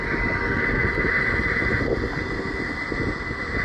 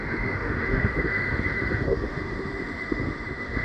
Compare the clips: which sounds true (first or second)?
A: first